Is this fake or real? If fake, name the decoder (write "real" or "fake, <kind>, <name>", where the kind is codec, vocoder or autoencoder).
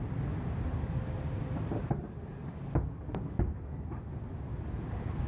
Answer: real